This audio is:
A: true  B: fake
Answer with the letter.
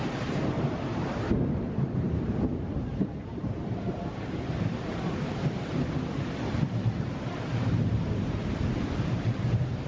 B